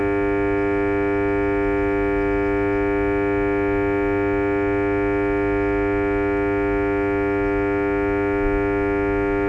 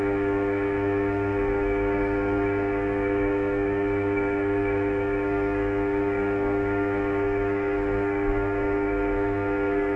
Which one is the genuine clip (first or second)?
first